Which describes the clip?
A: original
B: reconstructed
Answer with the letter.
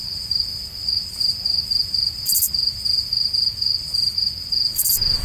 A